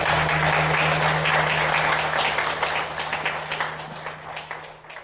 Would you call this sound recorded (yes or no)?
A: yes